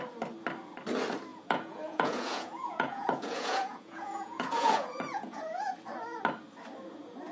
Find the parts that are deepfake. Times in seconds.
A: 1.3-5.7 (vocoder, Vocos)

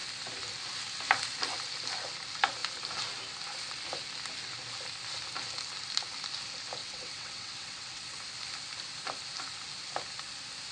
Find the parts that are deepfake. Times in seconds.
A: 6.8-8.2 (vocoder, WaveNeXt)

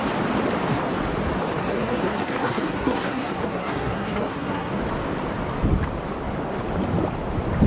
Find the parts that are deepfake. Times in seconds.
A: 1.6-4.7 (codec, SNAC)

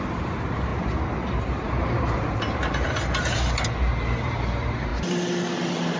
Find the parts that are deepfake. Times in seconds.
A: 0.0-0.7 (vocoder, BigVGAN v2); 1.4-4.9

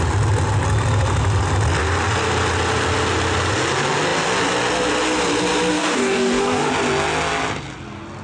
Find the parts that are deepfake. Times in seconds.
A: 5.7-6.7 (codec, DAC)

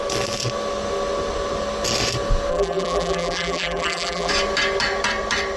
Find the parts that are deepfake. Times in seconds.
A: 2.5-4.3 (vocoder, BigVGAN v2)